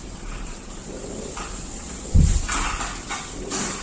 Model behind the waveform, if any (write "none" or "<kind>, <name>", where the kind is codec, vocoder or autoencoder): none